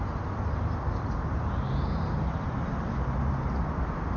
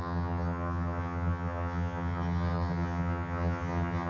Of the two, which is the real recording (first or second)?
first